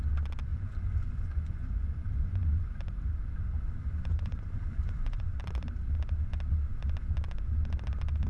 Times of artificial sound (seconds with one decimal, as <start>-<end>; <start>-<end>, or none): 0.5-2.8; 4.1-5.3